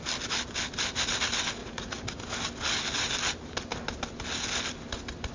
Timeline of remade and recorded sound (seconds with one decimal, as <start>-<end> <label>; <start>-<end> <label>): 0.0-1.6 recorded; 1.6-2.1 remade; 2.1-5.3 recorded